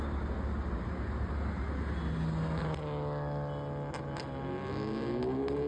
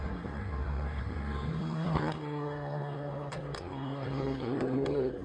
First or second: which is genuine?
first